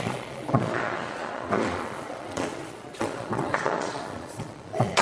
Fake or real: fake